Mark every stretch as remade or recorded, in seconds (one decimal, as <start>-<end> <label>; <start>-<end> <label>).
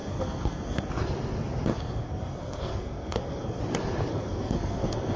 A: 0.0-0.9 remade; 0.9-1.7 recorded; 1.7-3.6 remade; 3.6-4.1 recorded; 4.1-5.2 remade